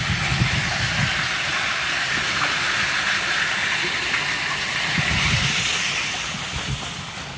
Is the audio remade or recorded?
recorded